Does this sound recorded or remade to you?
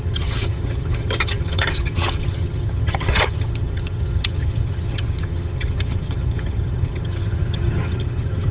remade